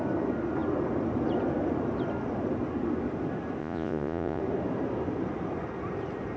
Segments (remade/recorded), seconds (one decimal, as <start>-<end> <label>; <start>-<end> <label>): 0.0-3.6 recorded; 3.6-4.4 remade; 4.4-6.4 recorded